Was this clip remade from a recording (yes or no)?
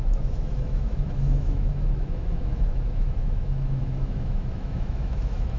yes